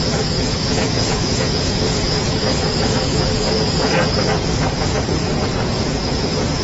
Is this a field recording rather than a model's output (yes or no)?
no